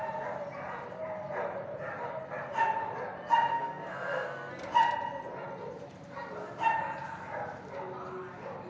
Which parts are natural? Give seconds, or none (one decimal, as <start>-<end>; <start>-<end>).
0.0-3.5; 4.5-8.7

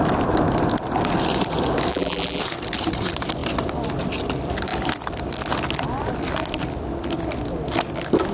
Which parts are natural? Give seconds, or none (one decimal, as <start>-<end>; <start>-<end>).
0.0-1.9; 2.4-8.3

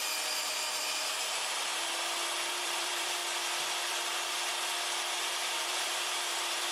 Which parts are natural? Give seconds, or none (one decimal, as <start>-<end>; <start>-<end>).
1.7-2.5; 3.2-5.2

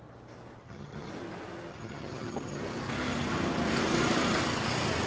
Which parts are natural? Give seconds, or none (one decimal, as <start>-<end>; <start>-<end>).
0.0-0.6; 1.1-1.7; 2.6-5.1

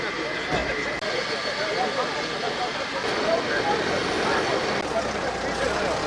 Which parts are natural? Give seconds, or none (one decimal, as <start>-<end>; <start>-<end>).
0.0-6.1

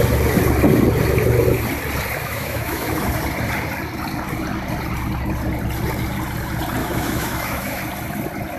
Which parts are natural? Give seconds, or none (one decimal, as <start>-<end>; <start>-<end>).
0.0-2.2; 3.1-6.8; 7.8-8.6